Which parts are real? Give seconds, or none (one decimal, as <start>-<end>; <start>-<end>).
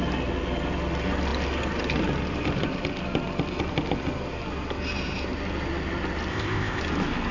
0.0-6.3; 6.8-7.3